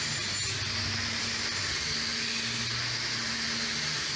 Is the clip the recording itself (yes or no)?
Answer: yes